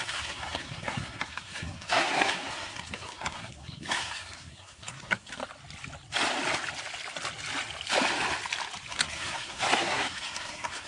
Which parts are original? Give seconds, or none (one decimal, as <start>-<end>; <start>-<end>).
5.4-8.9